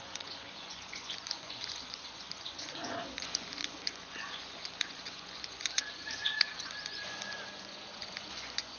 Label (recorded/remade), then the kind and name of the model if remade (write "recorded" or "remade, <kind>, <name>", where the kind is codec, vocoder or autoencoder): remade, vocoder, Vocos